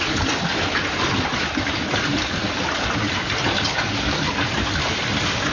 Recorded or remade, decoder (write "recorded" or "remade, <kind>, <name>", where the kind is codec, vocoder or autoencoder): recorded